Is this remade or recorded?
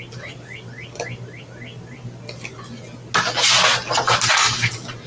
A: recorded